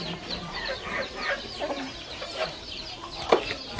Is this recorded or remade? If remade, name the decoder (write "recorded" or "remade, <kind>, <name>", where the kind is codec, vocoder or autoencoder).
remade, vocoder, BigVGAN v2